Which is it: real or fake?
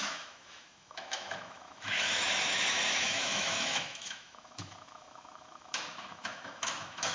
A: fake